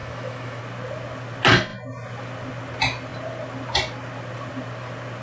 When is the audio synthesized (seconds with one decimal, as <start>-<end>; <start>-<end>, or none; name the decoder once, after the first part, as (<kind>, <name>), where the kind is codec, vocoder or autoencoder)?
0.0-0.6 (autoencoder, DAC-VAE)